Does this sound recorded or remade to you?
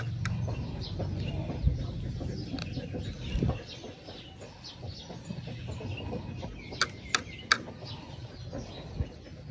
recorded